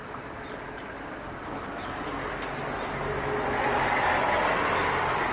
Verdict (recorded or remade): recorded